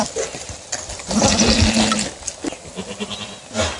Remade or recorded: recorded